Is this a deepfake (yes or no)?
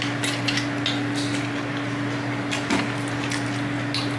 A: no